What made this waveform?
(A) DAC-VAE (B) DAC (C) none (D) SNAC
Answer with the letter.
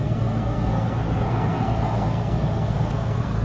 D